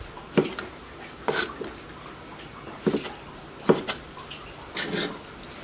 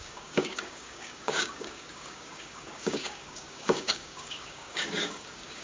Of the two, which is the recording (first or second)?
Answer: first